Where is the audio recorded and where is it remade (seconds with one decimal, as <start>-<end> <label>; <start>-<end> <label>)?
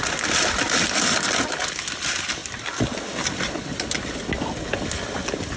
0.0-5.6 recorded